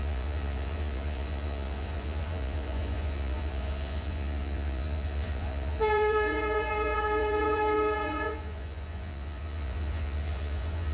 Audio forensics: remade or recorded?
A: remade